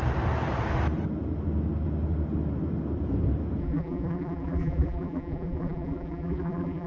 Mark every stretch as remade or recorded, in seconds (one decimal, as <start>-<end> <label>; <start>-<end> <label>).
0.0-3.6 recorded; 3.6-6.9 remade